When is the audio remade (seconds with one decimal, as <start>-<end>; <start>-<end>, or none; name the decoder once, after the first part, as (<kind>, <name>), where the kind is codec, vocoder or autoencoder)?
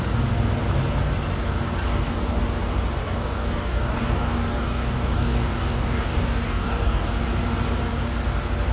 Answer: 1.9-2.4 (codec, DAC); 3.0-7.1